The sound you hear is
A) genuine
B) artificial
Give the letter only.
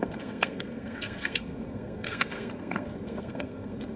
B